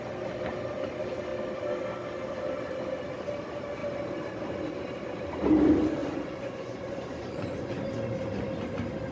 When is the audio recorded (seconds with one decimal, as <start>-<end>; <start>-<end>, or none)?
0.0-6.0; 7.8-9.1